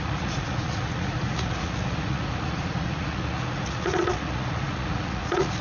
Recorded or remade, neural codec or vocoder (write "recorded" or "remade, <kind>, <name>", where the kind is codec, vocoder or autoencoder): remade, vocoder, Vocos